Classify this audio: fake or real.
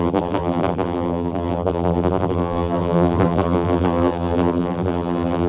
fake